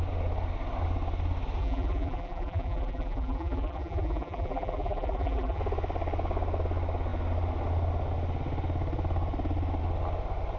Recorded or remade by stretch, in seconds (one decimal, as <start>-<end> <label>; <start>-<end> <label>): 0.0-1.6 recorded; 1.6-5.6 remade; 5.6-10.6 recorded